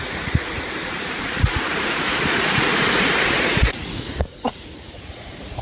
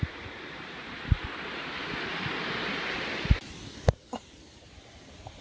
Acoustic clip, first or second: second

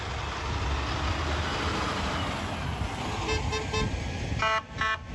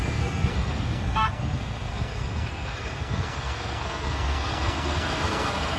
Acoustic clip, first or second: first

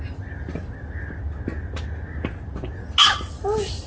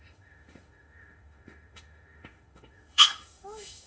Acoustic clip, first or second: first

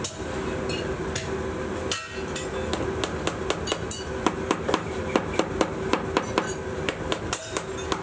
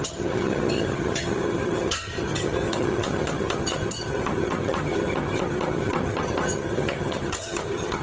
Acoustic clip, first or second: first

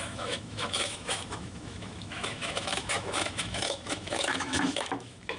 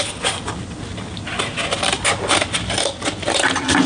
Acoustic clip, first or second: second